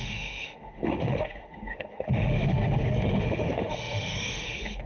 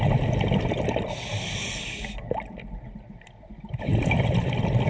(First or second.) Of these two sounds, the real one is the second